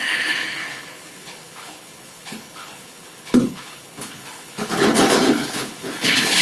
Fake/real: fake